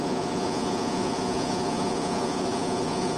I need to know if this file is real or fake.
fake